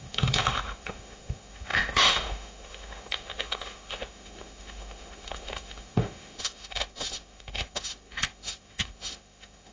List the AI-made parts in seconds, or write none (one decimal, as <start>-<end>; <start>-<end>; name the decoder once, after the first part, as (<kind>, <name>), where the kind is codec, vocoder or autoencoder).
0.0-9.7 (autoencoder, DAC-VAE)